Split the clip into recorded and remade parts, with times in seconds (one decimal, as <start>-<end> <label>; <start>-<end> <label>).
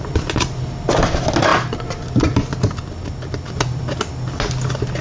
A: 0.0-5.0 recorded